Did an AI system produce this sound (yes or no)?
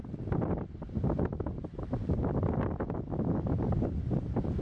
no